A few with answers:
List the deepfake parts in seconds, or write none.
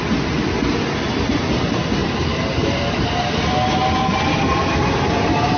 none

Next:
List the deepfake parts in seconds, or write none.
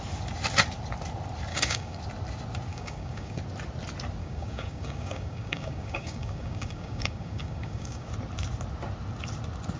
1.5-2.0 (codec, DAC); 2.7-3.4; 4.2-8.1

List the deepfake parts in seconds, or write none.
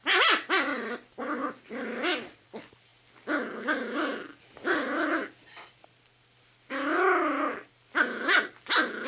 none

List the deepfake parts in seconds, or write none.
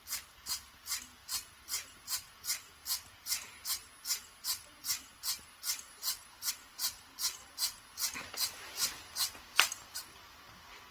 none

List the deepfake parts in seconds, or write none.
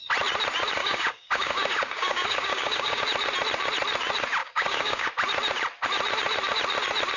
0.8-3.0 (codec, DAC); 4.4-5.1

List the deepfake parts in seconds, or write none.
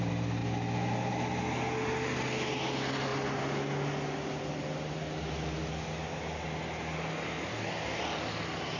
7.5-8.0 (codec, DAC)